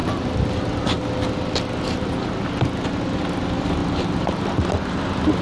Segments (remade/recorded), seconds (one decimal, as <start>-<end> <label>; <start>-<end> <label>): 0.0-5.4 recorded